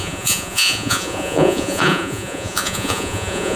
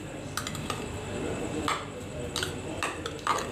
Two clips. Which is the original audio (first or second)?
second